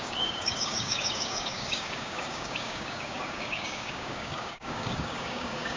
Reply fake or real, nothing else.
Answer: fake